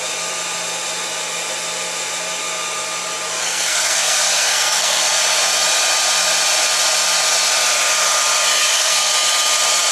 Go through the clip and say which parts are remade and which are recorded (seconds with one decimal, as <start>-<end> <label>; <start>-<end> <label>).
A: 0.0-3.4 recorded; 3.4-5.1 remade; 5.1-8.6 recorded; 8.6-9.1 remade; 9.1-9.9 recorded